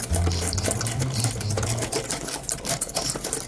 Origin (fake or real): real